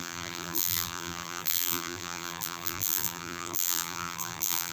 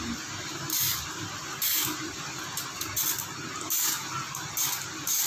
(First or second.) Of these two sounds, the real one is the second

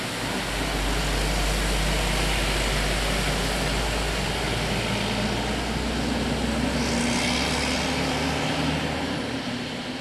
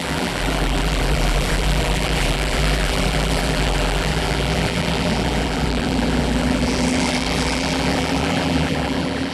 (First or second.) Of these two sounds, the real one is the first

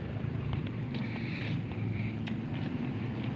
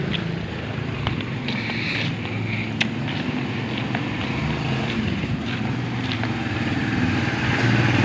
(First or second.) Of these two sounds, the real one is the second